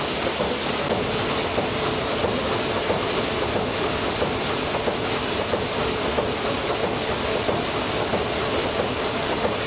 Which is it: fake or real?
real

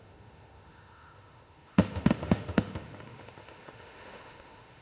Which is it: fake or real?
fake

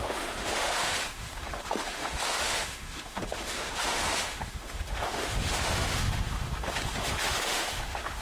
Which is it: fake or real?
fake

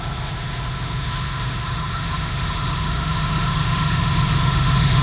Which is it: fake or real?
fake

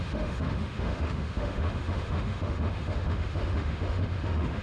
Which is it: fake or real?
fake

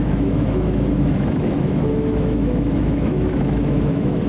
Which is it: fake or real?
fake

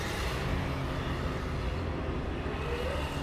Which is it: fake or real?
real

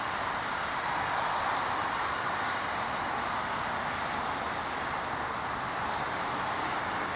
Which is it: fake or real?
real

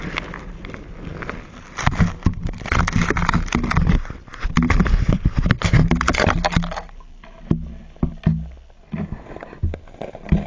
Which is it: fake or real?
real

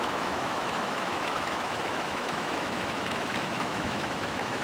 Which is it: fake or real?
fake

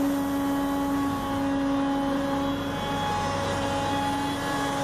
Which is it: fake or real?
real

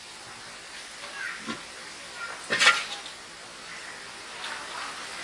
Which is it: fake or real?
real